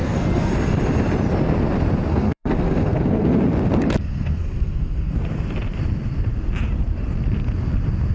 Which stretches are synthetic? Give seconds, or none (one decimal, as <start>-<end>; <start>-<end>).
0.0-0.5; 2.1-3.4; 4.0-5.2